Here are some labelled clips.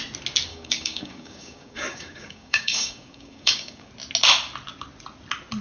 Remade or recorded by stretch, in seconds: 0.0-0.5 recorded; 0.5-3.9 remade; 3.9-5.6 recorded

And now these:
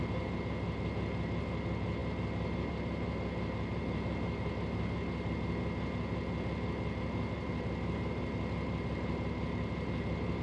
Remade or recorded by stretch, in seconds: 0.0-10.4 recorded

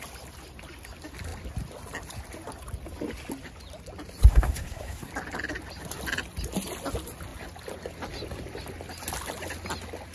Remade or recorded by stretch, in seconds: 0.0-4.3 recorded; 4.3-5.1 remade; 5.1-10.1 recorded

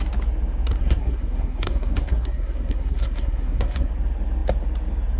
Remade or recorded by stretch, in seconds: 0.0-0.8 recorded; 0.8-3.9 remade; 3.9-5.2 recorded

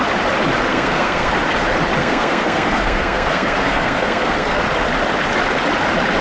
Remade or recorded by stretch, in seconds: 0.0-0.7 recorded; 0.7-1.3 remade; 1.3-2.0 recorded; 2.0-4.6 remade; 4.6-6.2 recorded

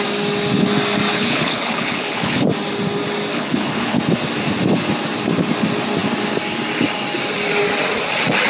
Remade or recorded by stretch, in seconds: 0.0-1.1 recorded; 1.1-2.5 remade; 2.5-3.3 recorded; 3.3-4.0 remade; 4.0-8.5 recorded

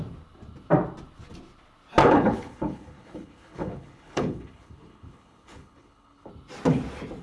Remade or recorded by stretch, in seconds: 0.0-2.0 recorded; 2.0-6.3 remade; 6.3-7.2 recorded